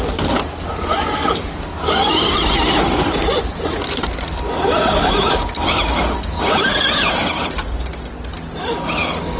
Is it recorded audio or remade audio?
recorded